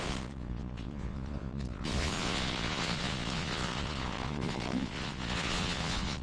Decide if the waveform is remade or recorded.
remade